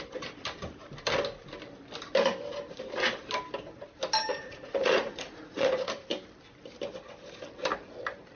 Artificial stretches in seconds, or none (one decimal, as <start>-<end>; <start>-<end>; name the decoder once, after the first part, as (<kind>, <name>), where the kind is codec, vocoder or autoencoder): 4.3-5.9 (vocoder, Vocos)